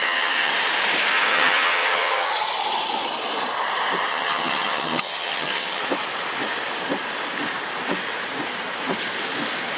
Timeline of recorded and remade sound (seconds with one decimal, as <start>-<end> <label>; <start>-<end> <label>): 0.0-0.5 remade; 0.5-1.1 recorded; 1.1-2.3 remade; 2.3-4.1 recorded; 4.1-5.8 remade; 5.8-9.8 recorded